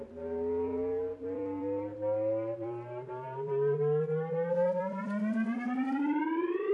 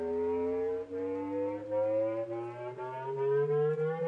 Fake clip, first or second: first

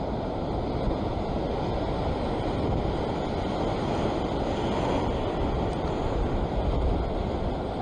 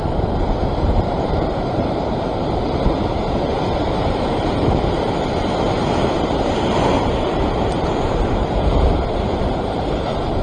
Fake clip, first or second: second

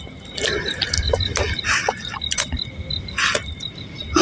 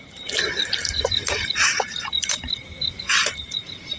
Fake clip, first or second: second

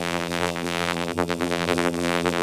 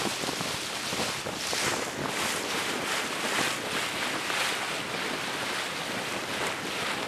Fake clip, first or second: first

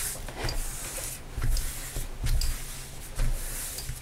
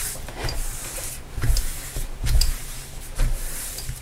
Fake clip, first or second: second